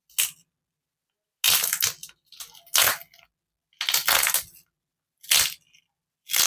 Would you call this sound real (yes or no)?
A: yes